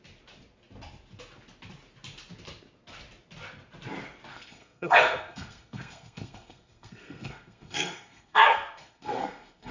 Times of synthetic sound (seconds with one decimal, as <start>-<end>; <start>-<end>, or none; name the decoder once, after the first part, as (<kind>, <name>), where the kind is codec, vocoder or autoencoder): 4.3-9.7 (codec, SNAC)